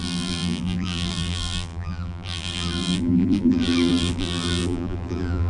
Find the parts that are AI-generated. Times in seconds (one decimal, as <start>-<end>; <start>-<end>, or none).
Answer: 0.0-5.5